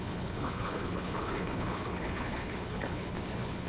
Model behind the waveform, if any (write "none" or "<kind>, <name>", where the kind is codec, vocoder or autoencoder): codec, HILCodec